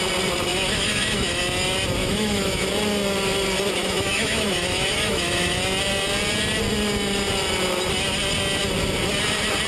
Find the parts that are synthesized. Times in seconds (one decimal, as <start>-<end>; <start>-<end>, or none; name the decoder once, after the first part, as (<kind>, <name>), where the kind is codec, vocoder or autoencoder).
0.5-1.4 (autoencoder, DAC-VAE); 2.0-2.7; 3.8-5.6